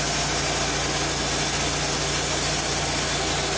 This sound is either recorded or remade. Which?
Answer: recorded